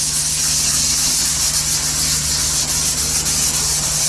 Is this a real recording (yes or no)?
yes